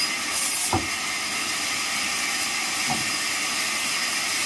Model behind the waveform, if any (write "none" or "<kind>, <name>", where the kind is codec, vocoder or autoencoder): none